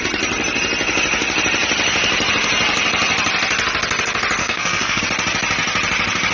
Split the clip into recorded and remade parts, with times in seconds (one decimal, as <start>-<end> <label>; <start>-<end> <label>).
0.0-4.4 recorded; 4.4-5.0 remade; 5.0-6.3 recorded